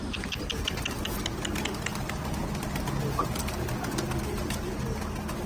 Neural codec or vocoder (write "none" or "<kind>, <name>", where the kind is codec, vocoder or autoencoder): none